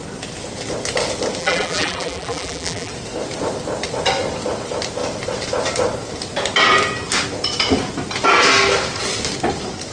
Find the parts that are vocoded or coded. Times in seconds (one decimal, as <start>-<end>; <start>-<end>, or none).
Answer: 1.4-2.9